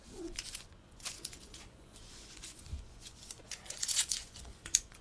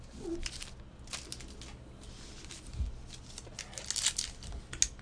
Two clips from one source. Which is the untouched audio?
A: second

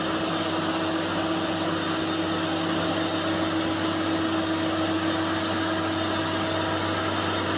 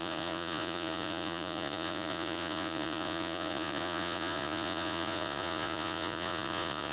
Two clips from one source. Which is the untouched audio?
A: first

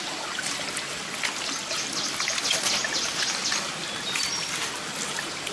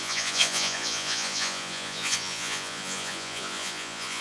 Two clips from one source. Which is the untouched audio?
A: first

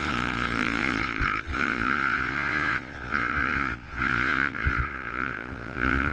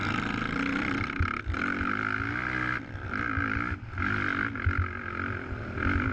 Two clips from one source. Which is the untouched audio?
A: second